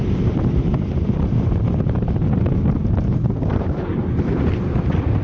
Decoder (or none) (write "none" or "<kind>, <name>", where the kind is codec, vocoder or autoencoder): vocoder, BigVGAN v2